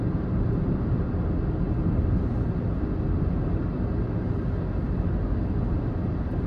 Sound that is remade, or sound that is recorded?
recorded